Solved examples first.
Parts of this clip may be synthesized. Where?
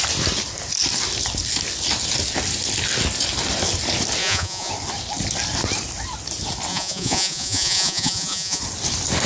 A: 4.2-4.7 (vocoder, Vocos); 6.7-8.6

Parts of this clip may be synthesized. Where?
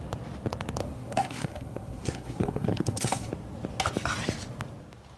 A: 0.8-3.3 (codec, SNAC)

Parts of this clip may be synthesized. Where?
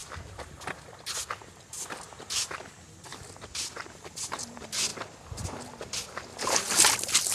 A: 0.0-0.5 (vocoder, BigVGAN v2)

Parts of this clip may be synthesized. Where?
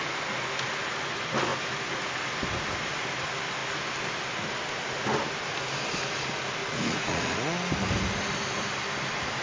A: 6.6-7.2 (vocoder, Vocos)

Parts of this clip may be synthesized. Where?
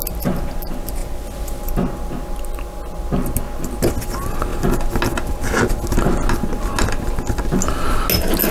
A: none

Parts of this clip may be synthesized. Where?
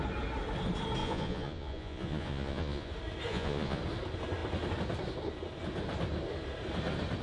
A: 1.0-2.9 (vocoder, Vocos); 3.3-3.8